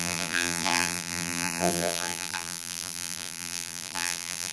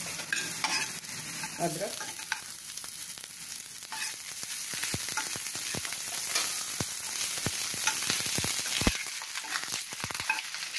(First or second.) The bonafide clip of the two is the second